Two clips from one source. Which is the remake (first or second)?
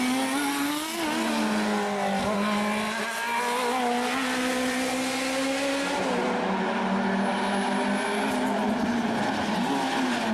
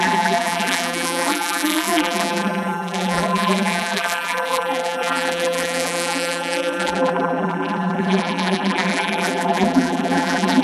second